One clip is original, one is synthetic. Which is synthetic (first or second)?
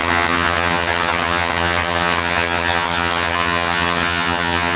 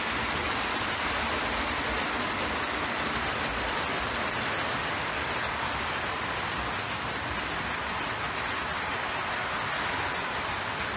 first